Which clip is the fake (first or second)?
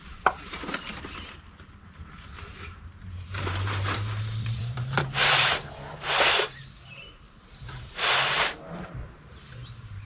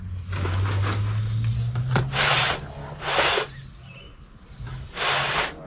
first